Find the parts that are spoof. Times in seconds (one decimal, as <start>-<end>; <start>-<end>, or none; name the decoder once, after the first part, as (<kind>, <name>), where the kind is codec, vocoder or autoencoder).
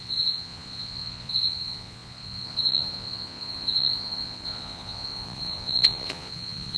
0.0-6.8 (vocoder, Vocos)